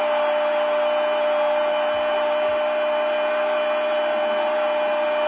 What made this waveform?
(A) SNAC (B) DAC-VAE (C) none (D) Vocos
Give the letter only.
C